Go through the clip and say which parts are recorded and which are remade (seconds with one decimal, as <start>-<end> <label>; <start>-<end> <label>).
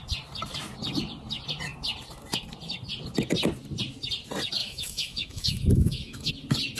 0.0-4.6 recorded; 4.6-6.3 remade; 6.3-6.8 recorded